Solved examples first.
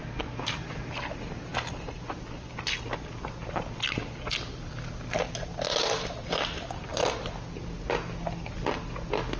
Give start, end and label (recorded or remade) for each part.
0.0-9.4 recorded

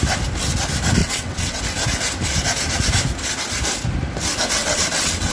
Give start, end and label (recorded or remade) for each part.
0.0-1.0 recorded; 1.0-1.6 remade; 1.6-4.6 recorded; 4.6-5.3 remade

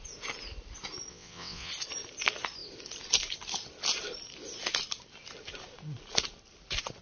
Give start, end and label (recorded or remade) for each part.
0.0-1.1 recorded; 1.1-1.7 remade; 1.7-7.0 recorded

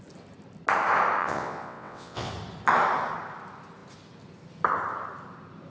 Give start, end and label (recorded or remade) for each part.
0.0-1.2 recorded; 1.2-2.3 remade; 2.3-5.7 recorded

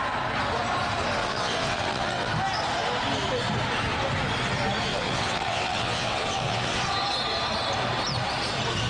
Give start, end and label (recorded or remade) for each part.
0.0-1.2 recorded; 1.2-2.3 remade; 2.3-4.9 recorded; 4.9-6.8 remade; 6.8-8.9 recorded

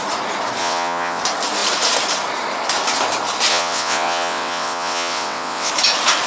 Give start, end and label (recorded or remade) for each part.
0.0-0.6 recorded; 0.6-1.2 remade; 1.2-3.5 recorded; 3.5-5.7 remade; 5.7-6.3 recorded

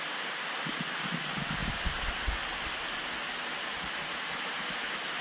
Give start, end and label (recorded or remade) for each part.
0.0-5.2 recorded